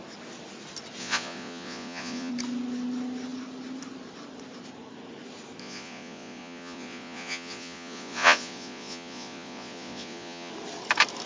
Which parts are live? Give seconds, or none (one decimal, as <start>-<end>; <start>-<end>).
0.0-1.0; 2.3-5.6; 10.5-11.3